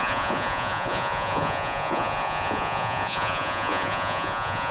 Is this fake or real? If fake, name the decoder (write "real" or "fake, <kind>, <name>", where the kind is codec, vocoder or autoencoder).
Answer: fake, vocoder, Vocos